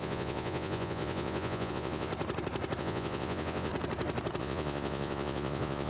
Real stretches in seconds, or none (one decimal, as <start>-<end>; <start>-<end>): 2.1-2.8; 3.7-4.4